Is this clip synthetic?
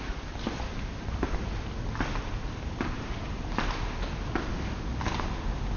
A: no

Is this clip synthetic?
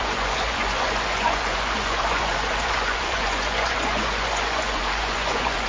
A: yes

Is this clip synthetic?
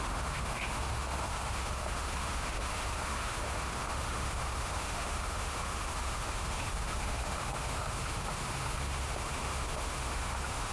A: yes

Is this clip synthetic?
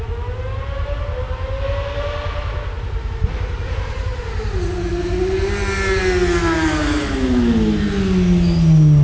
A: no